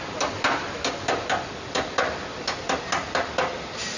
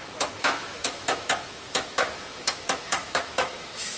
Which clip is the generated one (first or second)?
second